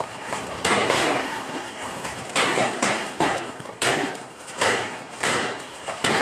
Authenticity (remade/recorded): remade